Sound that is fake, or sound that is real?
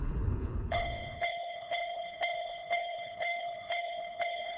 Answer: fake